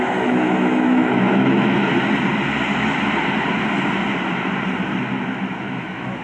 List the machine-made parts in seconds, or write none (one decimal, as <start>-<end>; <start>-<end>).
0.0-1.9; 5.6-6.2